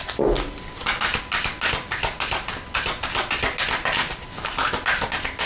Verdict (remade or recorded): recorded